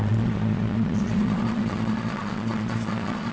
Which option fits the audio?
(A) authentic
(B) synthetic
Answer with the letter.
B